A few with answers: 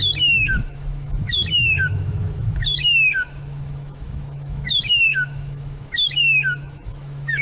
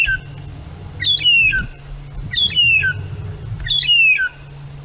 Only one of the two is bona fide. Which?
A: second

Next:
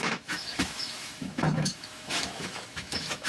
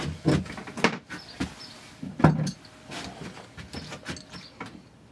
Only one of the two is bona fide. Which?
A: second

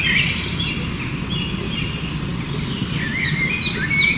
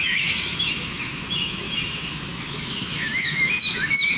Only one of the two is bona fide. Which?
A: first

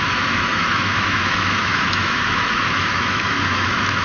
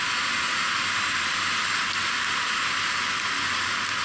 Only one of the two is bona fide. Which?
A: second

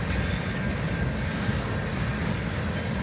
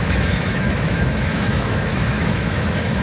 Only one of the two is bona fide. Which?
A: first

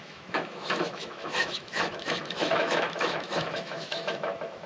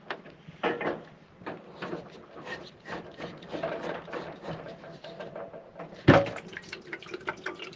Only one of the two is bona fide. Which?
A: second